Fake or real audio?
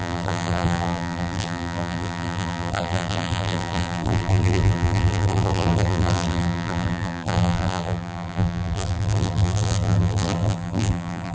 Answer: fake